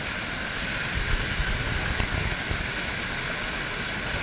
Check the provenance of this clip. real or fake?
real